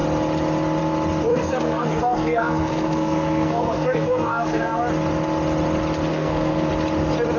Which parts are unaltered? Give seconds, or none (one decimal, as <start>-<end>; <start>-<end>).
0.0-1.3; 4.8-6.1; 6.7-7.4